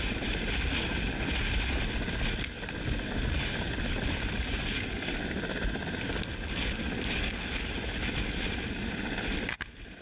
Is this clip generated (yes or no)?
no